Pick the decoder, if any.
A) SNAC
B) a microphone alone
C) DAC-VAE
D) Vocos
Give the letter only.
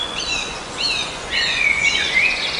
D